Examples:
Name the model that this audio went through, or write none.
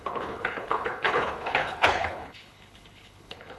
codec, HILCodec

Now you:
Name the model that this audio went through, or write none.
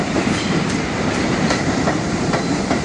vocoder, BigVGAN v2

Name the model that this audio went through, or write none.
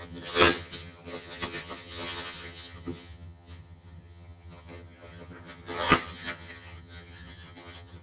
vocoder, HiFi-GAN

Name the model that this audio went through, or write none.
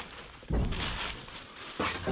none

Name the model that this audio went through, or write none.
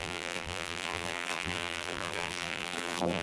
vocoder, BigVGAN v2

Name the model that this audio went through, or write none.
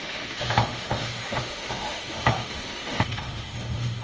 autoencoder, DAC-VAE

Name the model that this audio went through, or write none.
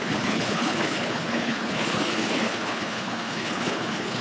codec, HILCodec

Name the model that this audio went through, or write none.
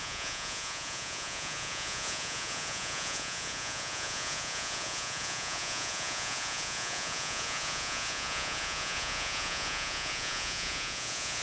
vocoder, Vocos